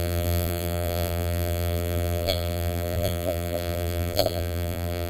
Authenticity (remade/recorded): remade